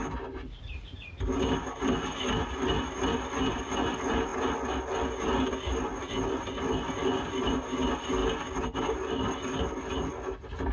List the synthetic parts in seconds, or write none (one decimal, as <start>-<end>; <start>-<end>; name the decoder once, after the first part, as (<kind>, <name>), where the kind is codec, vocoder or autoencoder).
none